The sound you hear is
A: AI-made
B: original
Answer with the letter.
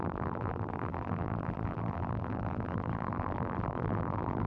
A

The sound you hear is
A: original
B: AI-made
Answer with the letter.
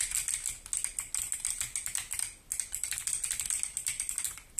A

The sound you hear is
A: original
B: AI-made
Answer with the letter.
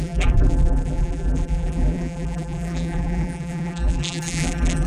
B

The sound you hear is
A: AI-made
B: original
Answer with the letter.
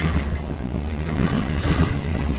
A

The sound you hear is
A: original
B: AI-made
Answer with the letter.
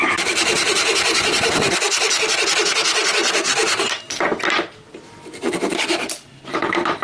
A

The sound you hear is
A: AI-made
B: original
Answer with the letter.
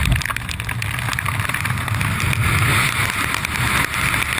B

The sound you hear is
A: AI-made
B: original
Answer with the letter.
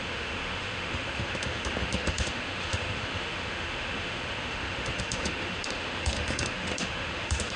A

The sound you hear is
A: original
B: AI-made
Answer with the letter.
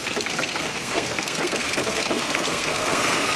B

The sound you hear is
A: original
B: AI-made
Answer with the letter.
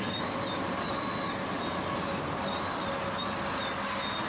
A